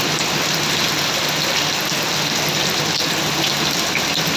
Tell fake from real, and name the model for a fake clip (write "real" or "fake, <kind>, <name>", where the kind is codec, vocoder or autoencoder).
real